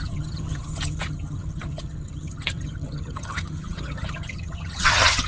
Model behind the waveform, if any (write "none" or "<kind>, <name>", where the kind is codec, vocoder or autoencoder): vocoder, HiFi-GAN